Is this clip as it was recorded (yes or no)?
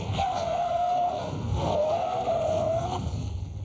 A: no